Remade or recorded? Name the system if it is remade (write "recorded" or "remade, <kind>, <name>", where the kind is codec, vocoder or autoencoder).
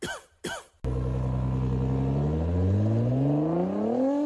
recorded